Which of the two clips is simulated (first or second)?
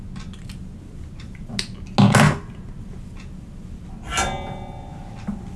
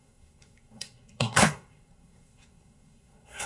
second